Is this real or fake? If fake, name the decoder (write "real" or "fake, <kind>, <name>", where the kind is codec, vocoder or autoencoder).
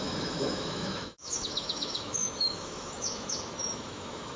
fake, autoencoder, DAC-VAE